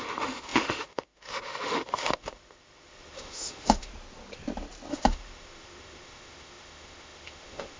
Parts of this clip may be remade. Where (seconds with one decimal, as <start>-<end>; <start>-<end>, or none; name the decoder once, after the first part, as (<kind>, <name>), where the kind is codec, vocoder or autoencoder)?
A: 0.0-3.9 (autoencoder, DAC-VAE); 4.9-7.8